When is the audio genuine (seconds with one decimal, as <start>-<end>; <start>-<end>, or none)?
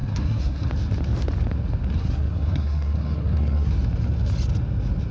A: 0.7-1.9; 3.7-5.1